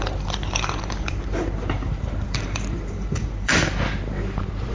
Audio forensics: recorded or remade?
remade